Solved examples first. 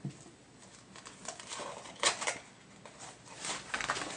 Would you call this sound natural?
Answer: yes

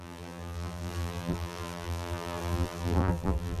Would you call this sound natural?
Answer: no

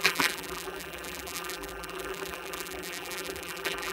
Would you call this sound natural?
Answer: no